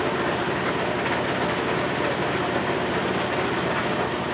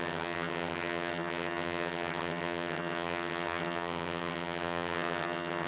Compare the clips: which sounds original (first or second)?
first